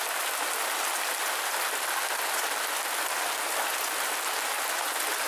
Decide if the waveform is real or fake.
real